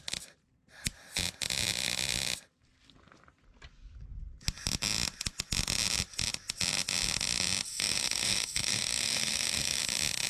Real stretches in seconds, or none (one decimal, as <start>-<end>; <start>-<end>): 0.0-7.7; 9.8-10.3